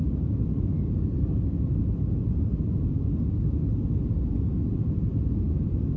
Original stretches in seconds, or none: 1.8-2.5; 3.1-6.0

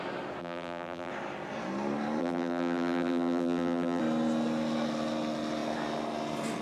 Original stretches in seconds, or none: 0.0-0.4; 1.1-2.2; 4.0-6.6

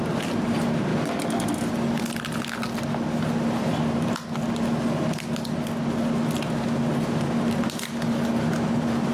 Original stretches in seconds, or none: 0.0-9.1